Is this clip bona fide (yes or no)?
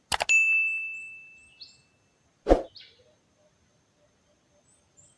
yes